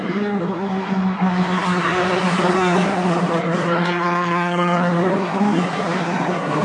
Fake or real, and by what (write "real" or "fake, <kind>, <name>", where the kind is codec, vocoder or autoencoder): fake, codec, SNAC